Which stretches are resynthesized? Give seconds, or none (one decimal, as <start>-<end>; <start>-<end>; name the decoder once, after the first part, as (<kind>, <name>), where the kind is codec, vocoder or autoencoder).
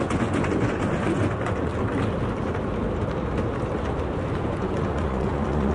0.0-1.7 (vocoder, Vocos); 4.3-5.7